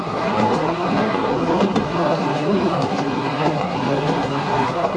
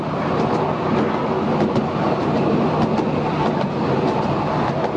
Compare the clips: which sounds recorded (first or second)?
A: second